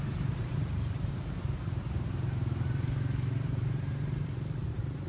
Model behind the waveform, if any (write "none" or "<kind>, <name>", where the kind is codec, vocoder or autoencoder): vocoder, BigVGAN v2